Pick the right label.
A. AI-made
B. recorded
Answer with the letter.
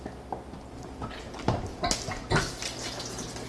B